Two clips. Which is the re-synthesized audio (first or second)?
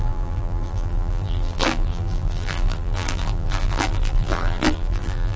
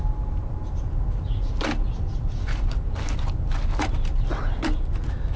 first